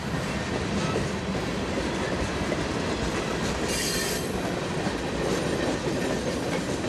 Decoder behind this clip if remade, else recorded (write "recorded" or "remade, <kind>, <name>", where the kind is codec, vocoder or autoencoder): recorded